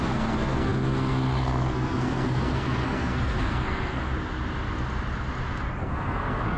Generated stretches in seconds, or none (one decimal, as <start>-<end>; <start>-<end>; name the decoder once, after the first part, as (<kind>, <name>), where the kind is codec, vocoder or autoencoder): 0.0-4.0 (codec, SNAC); 5.8-6.6